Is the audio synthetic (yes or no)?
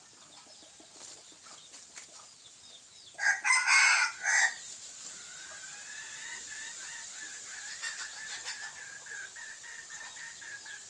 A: no